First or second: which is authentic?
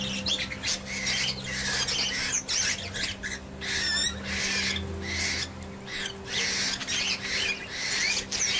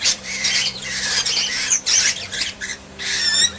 first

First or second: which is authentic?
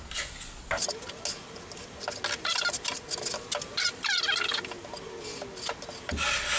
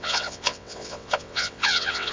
first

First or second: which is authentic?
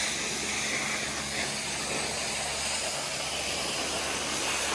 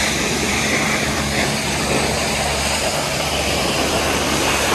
first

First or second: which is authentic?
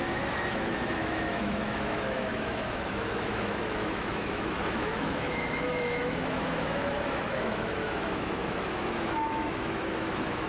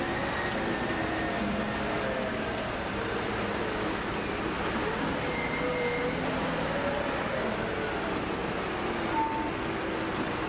second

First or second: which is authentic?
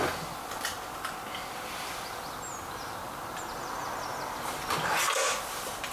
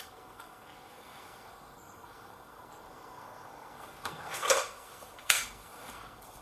first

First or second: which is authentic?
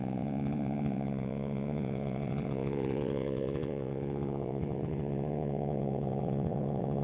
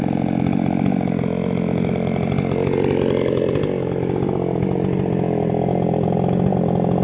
second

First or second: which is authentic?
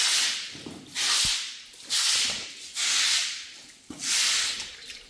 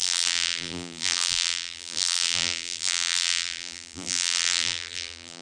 first